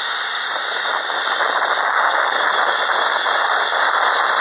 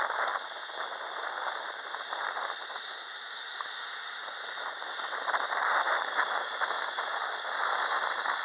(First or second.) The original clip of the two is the first